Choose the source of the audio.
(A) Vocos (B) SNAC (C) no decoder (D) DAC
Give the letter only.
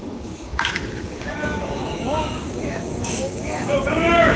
D